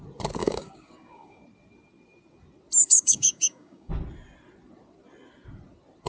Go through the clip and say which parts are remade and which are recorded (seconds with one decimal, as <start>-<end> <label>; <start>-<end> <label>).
0.0-0.4 recorded; 0.4-1.4 remade; 1.4-2.8 recorded; 2.8-3.9 remade; 3.9-6.1 recorded